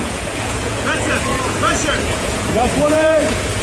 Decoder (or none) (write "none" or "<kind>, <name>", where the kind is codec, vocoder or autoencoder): vocoder, Vocos